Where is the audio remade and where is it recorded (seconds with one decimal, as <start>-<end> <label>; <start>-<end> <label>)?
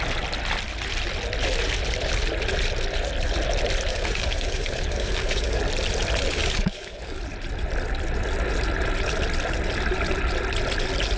0.0-3.9 recorded; 3.9-5.6 remade; 5.6-6.4 recorded; 6.4-7.2 remade; 7.2-11.2 recorded